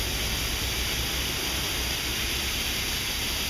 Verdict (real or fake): real